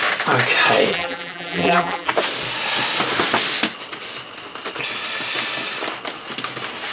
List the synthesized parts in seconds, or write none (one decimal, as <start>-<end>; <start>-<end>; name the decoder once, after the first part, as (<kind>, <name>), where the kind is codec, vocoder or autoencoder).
0.9-2.1 (vocoder, BigVGAN v2)